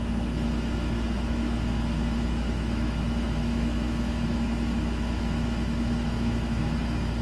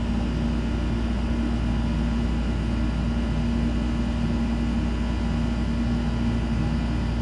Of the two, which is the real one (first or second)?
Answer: second